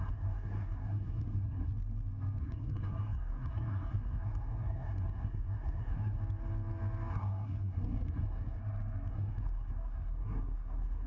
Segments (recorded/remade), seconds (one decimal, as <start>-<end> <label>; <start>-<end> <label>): 0.0-1.7 remade; 1.7-2.4 recorded; 2.4-6.2 remade; 6.2-7.1 recorded; 7.1-8.6 remade; 8.6-9.1 recorded; 9.1-11.1 remade